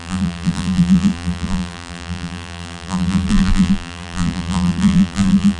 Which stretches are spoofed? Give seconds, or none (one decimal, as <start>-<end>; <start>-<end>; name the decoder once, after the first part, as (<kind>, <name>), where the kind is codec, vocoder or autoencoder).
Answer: 0.0-5.6 (vocoder, BigVGAN v2)